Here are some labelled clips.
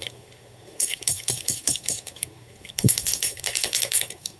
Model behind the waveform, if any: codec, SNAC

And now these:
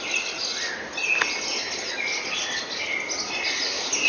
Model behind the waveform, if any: none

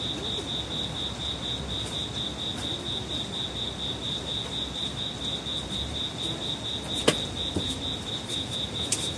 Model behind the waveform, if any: none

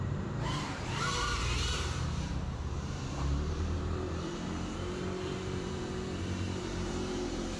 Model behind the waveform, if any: vocoder, BigVGAN v2